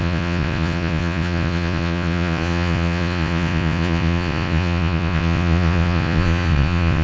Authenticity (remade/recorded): remade